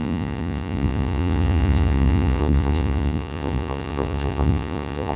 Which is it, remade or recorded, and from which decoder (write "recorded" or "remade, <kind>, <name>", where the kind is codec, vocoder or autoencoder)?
remade, vocoder, Vocos